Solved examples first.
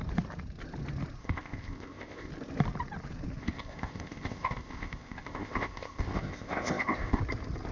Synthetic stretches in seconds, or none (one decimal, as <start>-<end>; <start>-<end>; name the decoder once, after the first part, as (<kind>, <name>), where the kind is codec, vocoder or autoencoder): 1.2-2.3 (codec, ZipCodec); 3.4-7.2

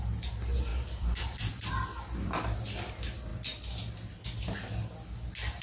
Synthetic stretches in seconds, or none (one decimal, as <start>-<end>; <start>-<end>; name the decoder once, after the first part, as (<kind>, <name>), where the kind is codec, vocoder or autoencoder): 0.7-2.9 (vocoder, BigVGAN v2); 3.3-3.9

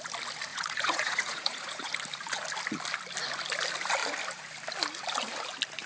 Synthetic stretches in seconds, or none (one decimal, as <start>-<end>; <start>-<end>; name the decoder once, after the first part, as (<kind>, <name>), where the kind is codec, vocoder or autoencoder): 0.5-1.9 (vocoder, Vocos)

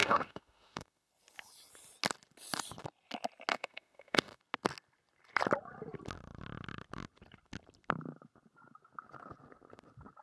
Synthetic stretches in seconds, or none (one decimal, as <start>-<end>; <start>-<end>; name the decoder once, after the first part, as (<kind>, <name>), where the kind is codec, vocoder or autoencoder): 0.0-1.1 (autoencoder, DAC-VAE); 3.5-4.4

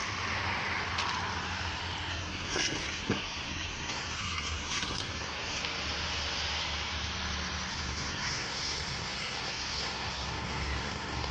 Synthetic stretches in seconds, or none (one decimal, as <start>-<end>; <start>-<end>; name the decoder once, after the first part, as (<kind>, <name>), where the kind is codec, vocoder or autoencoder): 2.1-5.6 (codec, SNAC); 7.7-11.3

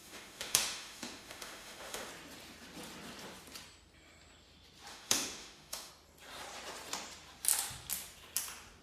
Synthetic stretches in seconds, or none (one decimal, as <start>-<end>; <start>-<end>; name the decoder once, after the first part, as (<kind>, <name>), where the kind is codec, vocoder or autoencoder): 0.0-2.1 (autoencoder, DAC-VAE); 4.9-5.9